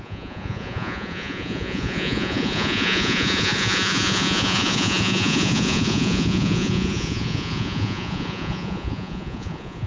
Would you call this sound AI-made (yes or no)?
yes